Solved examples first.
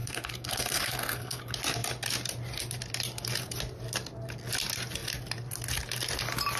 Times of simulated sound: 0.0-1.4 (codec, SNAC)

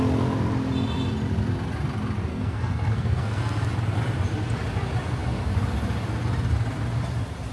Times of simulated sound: 2.3-3.4 (codec, SNAC)

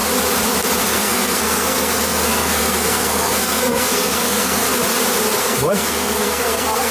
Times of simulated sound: 0.8-4.7 (codec, SNAC); 5.4-6.9